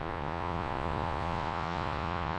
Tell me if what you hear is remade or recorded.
remade